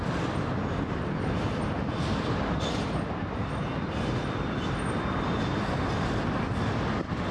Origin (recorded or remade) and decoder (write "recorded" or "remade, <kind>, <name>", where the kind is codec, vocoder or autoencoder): recorded